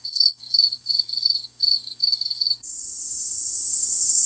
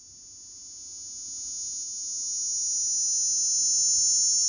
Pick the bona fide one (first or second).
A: second